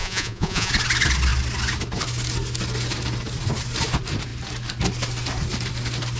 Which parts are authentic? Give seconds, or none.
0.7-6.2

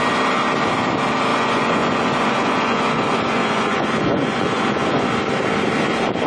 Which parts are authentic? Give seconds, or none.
0.0-1.3; 5.1-6.3

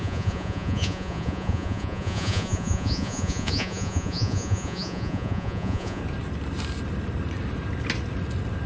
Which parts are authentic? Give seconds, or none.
6.0-8.7

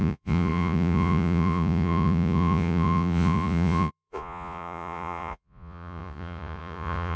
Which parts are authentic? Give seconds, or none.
none

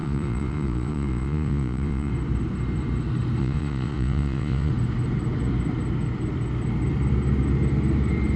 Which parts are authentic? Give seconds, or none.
2.1-3.4; 4.7-8.4

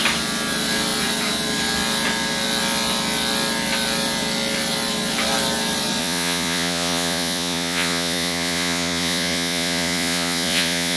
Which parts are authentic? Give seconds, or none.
0.0-6.0

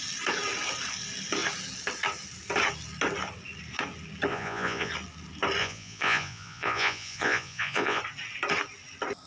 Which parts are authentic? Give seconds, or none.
0.0-4.3; 4.9-5.6; 8.0-9.3

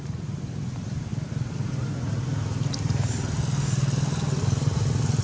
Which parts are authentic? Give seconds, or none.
0.0-5.2